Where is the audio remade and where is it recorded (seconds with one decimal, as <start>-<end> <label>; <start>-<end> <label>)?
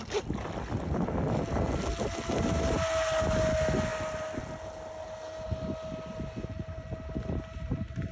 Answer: 0.0-8.1 recorded